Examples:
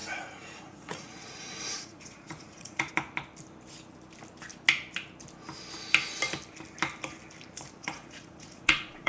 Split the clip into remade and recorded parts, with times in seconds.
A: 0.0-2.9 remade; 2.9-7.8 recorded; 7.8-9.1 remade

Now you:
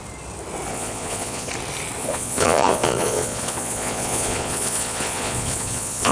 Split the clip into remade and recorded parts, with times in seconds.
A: 0.0-0.7 recorded; 0.7-1.5 remade; 1.5-2.0 recorded; 2.0-6.1 remade

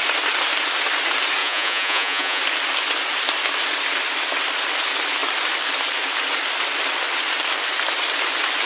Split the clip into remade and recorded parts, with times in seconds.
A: 0.0-1.4 recorded; 1.4-2.4 remade; 2.4-8.7 recorded

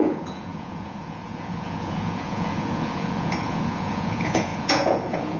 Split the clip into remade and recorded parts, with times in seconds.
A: 0.0-5.4 remade

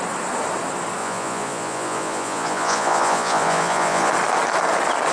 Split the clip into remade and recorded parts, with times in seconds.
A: 0.0-1.0 recorded; 1.0-4.1 remade; 4.1-5.1 recorded

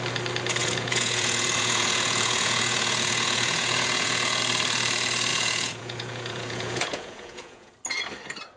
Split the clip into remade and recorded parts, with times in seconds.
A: 0.0-0.6 recorded; 0.6-4.4 remade; 4.4-5.3 recorded; 5.3-7.7 remade; 7.7-8.6 recorded

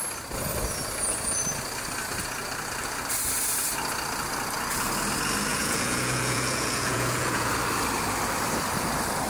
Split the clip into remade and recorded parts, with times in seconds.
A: 0.0-5.5 recorded; 5.5-7.5 remade; 7.5-9.3 recorded